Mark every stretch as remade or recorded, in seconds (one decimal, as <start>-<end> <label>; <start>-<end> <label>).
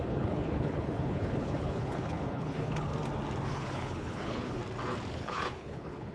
0.0-2.9 remade; 2.9-3.5 recorded; 3.5-4.6 remade; 4.6-5.1 recorded; 5.1-6.1 remade